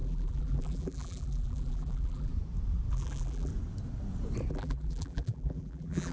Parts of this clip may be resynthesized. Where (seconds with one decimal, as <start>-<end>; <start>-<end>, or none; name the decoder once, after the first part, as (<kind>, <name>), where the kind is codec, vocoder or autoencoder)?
0.0-2.3 (vocoder, BigVGAN v2); 2.9-3.5; 4.5-6.1